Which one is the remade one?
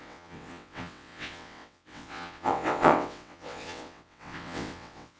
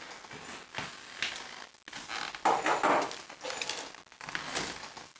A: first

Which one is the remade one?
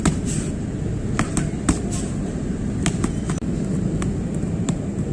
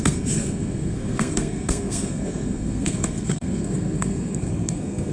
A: second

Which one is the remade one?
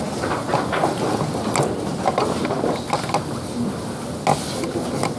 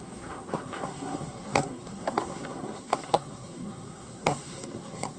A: second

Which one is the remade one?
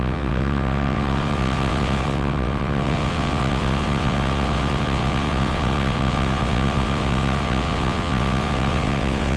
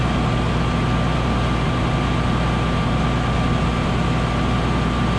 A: first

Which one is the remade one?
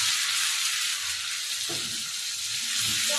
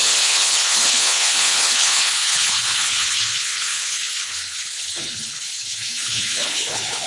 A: second